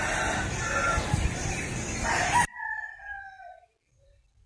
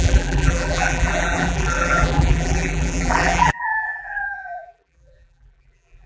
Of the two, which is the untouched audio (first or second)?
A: first